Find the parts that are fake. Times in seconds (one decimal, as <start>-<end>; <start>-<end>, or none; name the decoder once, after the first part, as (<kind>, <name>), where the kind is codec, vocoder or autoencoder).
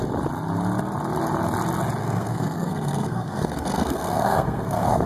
2.0-5.1 (codec, SNAC)